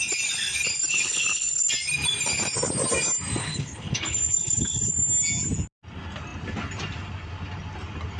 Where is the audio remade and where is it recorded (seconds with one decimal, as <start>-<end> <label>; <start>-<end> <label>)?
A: 0.0-0.9 recorded; 0.9-1.7 remade; 1.7-3.4 recorded; 3.4-4.9 remade; 4.9-8.2 recorded